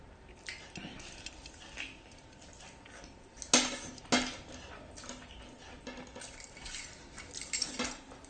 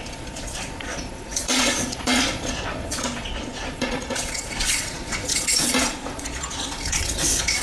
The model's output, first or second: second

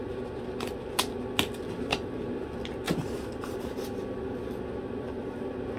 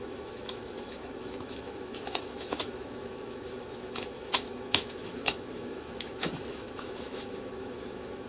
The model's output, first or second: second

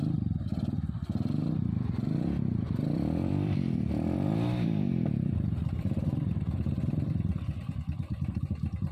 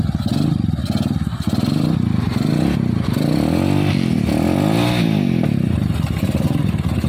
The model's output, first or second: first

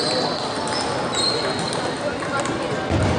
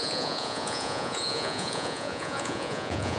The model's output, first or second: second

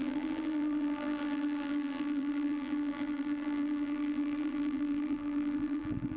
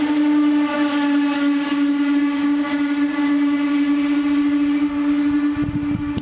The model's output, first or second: first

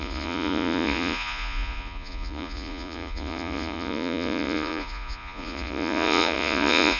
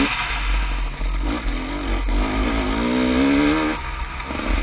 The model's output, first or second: first